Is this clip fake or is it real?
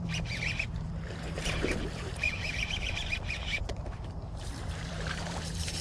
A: fake